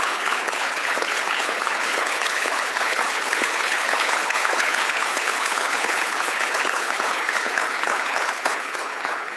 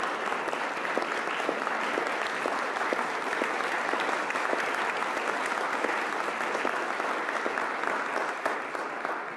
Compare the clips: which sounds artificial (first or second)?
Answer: first